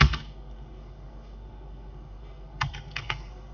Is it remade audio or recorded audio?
remade